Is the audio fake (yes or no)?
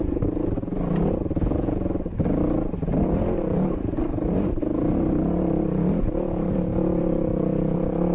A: no